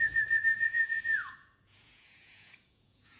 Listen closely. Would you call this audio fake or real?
fake